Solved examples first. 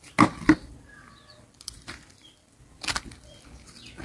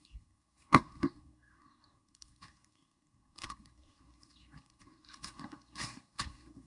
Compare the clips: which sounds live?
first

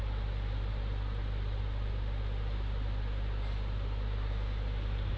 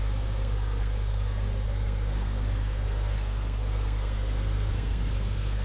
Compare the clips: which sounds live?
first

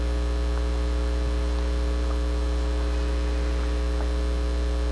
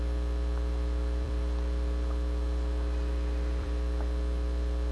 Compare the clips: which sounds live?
first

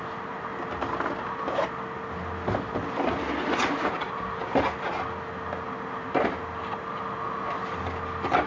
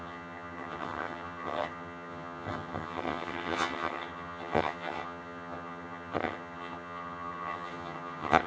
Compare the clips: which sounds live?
first